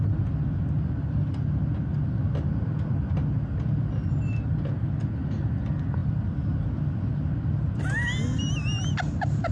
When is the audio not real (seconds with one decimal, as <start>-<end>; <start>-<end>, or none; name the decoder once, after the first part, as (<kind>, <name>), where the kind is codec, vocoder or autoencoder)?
none